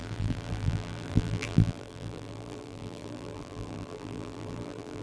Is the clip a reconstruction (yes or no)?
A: yes